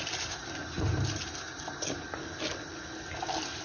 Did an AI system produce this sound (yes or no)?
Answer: no